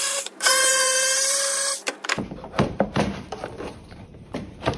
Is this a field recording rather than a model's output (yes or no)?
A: no